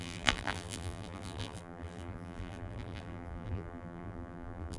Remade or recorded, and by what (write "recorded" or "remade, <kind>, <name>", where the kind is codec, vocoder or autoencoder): remade, vocoder, BigVGAN v2